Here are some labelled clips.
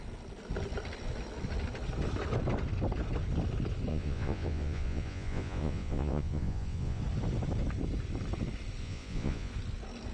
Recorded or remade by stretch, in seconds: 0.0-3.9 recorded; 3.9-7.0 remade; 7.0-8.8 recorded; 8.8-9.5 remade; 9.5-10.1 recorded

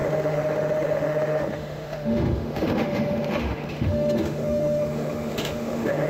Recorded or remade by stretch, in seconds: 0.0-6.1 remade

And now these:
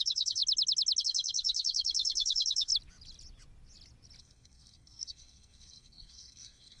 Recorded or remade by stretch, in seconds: 0.0-0.4 remade; 0.4-1.0 recorded; 1.0-2.7 remade; 2.7-4.2 recorded; 4.2-6.8 remade